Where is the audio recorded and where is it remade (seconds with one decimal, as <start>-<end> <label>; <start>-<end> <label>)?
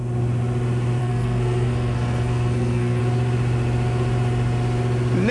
0.0-1.0 recorded; 1.0-3.0 remade; 3.0-5.3 recorded